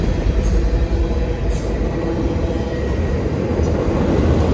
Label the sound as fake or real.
real